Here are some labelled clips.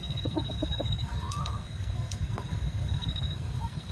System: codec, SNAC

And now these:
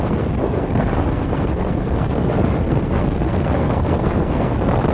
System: codec, SNAC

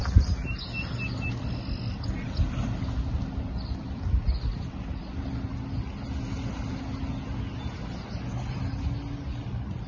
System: none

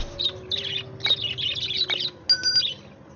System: none